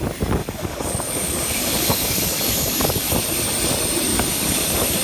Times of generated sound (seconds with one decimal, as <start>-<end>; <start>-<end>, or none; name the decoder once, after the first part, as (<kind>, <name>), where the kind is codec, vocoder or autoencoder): 0.4-3.1 (codec, DAC); 4.1-5.0